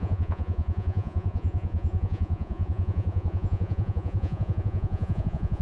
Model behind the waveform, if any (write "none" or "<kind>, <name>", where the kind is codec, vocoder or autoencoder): vocoder, Vocos